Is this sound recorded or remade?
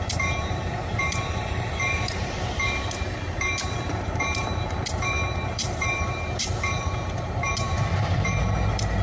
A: remade